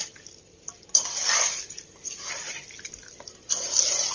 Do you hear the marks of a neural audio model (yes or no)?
no